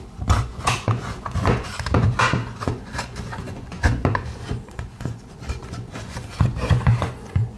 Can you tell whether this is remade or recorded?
remade